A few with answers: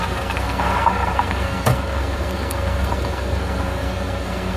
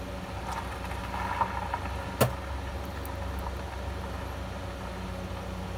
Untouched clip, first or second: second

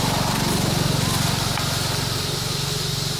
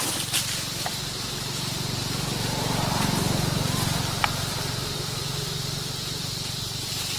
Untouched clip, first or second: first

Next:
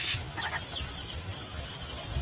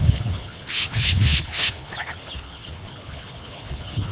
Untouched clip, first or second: first